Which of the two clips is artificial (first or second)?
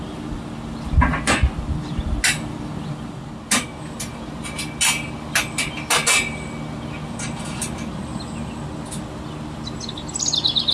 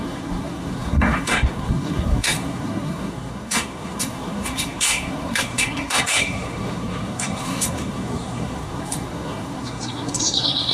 second